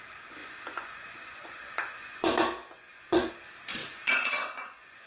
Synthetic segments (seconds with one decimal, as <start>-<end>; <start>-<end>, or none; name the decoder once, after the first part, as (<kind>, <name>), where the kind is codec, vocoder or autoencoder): 0.4-3.3 (vocoder, Vocos); 3.8-5.1